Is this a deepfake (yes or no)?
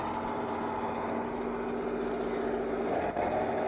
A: no